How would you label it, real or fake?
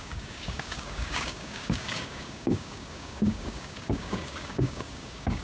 fake